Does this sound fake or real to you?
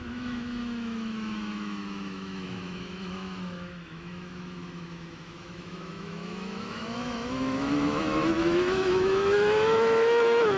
fake